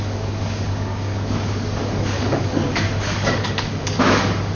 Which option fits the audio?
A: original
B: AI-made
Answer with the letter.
B